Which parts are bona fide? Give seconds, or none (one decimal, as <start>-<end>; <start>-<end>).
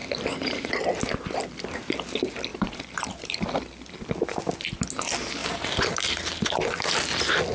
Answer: 0.7-2.5; 3.5-5.4; 6.0-7.5